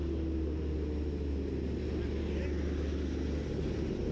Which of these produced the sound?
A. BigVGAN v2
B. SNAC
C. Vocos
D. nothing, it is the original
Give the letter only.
D